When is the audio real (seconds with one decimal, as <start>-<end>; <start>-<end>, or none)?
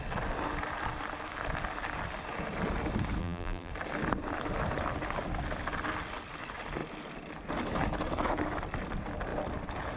0.0-3.2; 3.7-10.0